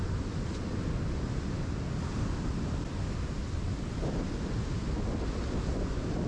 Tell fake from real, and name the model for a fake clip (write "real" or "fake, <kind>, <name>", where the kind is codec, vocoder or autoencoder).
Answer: real